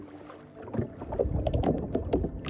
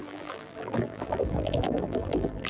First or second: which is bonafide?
first